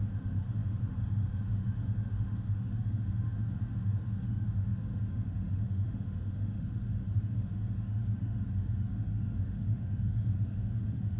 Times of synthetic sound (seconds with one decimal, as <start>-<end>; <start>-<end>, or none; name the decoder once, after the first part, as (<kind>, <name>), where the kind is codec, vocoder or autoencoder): 0.0-11.2 (autoencoder, DAC-VAE)